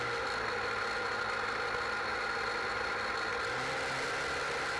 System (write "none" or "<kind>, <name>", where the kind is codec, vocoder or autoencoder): none